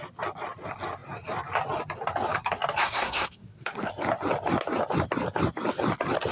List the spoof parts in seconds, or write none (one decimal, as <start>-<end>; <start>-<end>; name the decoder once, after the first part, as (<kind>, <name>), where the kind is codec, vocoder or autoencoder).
2.8-3.9 (codec, SNAC)